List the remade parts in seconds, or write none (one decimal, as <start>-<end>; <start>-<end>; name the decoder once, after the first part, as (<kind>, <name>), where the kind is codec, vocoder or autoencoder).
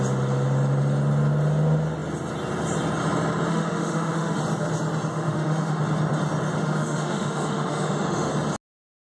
3.5-4.4 (autoencoder, DAC-VAE); 5.1-5.8; 6.6-8.3